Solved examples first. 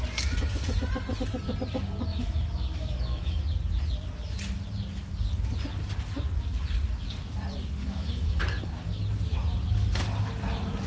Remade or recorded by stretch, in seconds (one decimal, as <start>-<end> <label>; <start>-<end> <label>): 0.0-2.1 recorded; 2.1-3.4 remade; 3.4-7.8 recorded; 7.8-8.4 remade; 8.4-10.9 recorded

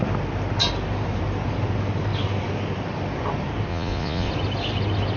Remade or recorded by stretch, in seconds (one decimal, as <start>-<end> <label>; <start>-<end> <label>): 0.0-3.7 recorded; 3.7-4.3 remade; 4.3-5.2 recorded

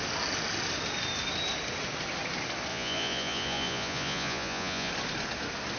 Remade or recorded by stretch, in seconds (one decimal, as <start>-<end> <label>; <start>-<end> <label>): 0.0-2.7 recorded; 2.7-4.9 remade; 4.9-5.8 recorded

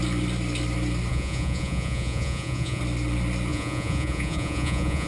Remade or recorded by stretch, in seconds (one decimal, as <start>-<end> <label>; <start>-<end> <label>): 0.0-1.1 recorded; 1.1-2.8 remade; 2.8-3.5 recorded; 3.5-5.1 remade

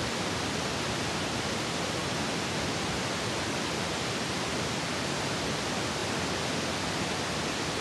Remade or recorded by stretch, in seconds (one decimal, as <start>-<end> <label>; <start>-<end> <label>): 0.0-7.8 recorded

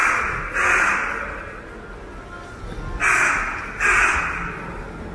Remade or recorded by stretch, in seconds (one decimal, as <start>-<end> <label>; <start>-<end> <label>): 0.0-5.1 recorded